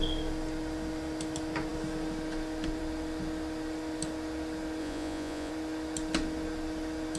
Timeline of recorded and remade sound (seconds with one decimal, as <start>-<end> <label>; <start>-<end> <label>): 0.0-4.8 recorded; 4.8-5.5 remade; 5.5-7.2 recorded